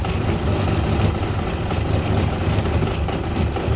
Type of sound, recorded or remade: recorded